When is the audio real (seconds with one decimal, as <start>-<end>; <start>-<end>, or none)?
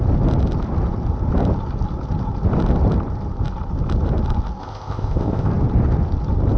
0.0-4.6; 5.5-6.6